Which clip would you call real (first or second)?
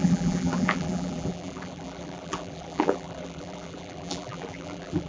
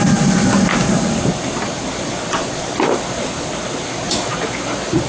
second